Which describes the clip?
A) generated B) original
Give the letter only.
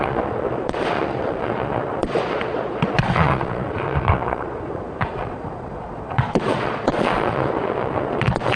A